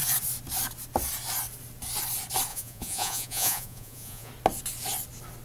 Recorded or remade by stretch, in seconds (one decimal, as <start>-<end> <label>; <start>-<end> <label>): 0.0-2.5 recorded; 2.5-4.3 remade; 4.3-5.4 recorded